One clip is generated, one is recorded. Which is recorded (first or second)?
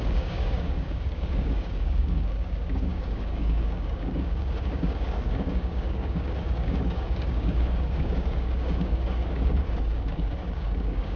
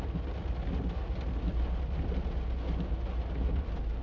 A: second